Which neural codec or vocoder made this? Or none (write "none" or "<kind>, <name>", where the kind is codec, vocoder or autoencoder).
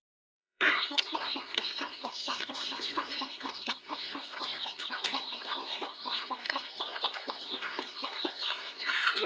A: codec, SNAC